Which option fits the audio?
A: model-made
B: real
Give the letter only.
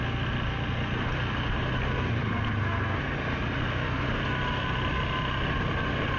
B